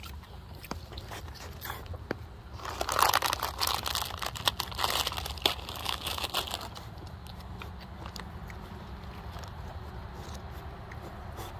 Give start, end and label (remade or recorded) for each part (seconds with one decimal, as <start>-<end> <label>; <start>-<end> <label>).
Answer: 0.0-5.8 recorded; 5.8-6.3 remade; 6.3-11.6 recorded